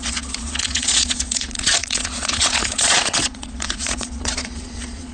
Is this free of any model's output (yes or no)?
no